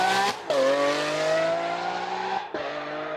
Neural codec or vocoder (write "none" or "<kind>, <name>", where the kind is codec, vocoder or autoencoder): none